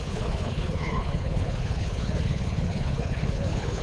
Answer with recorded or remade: remade